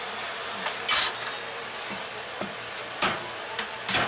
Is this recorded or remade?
recorded